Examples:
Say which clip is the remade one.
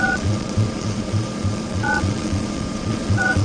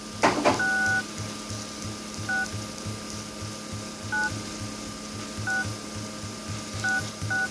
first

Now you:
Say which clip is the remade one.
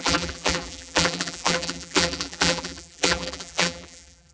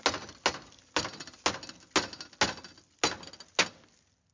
first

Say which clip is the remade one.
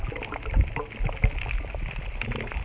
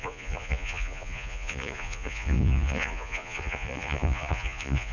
second